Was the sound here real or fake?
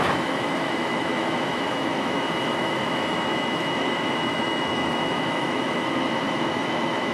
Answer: fake